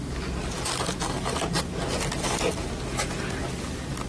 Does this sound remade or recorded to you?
recorded